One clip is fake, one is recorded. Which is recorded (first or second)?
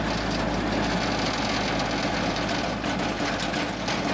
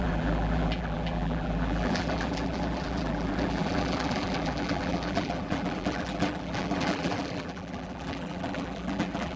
first